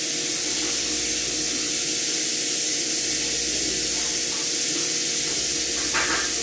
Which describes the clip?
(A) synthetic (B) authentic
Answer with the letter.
B